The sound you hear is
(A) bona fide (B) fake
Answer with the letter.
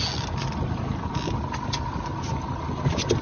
A